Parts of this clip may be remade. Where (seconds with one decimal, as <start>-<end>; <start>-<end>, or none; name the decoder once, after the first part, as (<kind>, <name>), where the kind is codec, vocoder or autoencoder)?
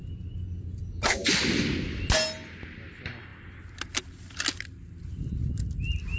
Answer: none